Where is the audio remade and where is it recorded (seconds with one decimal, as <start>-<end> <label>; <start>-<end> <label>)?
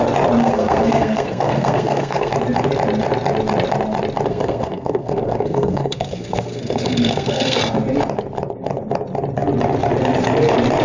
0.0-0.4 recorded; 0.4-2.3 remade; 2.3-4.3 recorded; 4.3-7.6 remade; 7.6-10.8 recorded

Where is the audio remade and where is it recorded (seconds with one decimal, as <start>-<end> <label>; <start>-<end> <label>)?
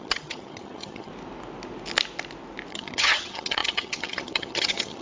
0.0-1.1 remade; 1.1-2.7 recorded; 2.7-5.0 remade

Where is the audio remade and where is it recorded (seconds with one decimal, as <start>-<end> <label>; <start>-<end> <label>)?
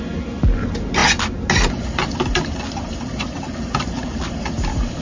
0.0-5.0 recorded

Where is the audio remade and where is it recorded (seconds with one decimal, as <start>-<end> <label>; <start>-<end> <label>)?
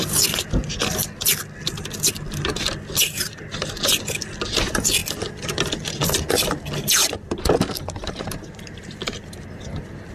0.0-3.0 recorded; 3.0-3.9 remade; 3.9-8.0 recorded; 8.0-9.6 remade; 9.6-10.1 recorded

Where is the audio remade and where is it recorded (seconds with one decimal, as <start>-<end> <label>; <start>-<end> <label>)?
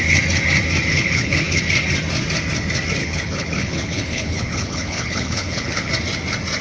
0.0-0.9 recorded; 0.9-1.6 remade; 1.6-3.0 recorded; 3.0-5.9 remade; 5.9-6.6 recorded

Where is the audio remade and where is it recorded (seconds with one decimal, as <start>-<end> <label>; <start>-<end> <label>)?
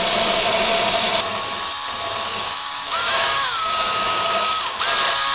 0.0-2.3 recorded; 2.3-4.8 remade; 4.8-5.3 recorded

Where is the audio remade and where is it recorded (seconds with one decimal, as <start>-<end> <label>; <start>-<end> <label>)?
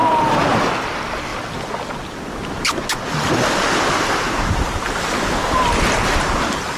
0.0-0.7 remade; 0.7-6.8 recorded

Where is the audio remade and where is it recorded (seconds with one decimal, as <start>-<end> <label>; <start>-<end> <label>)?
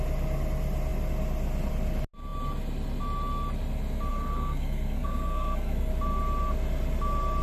0.0-4.1 recorded; 4.1-5.9 remade; 5.9-7.4 recorded